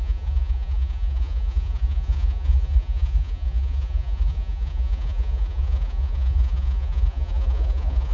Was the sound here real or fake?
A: fake